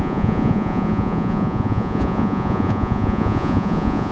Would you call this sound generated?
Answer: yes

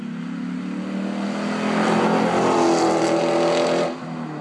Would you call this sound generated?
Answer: no